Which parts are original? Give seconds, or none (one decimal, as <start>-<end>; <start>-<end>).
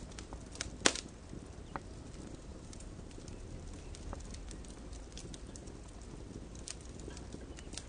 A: 0.0-2.5; 3.1-7.9